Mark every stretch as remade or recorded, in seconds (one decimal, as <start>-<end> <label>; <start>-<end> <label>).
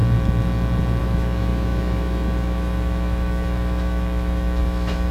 0.0-1.0 recorded; 1.0-5.1 remade